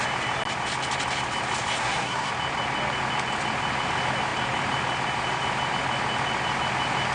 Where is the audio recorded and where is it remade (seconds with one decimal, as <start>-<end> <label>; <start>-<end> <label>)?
0.0-1.8 recorded; 1.8-2.3 remade; 2.3-7.1 recorded